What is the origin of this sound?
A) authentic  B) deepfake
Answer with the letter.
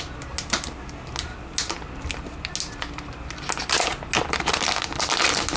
A